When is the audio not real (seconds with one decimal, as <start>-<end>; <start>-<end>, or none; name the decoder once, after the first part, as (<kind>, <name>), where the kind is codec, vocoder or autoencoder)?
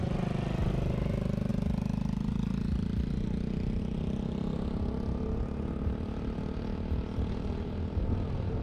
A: none